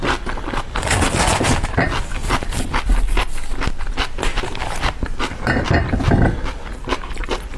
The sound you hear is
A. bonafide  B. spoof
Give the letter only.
A